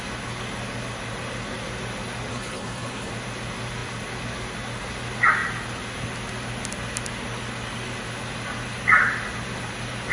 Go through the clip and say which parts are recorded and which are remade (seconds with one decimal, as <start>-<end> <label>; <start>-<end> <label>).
0.0-2.3 recorded; 2.3-3.1 remade; 3.1-10.1 recorded